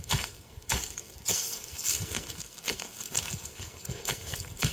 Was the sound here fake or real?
fake